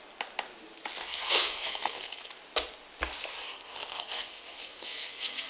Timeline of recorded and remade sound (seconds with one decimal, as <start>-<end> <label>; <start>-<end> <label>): 0.0-1.1 recorded; 1.1-2.3 remade; 2.3-3.4 recorded; 3.4-5.5 remade